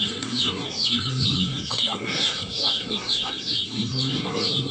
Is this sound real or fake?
fake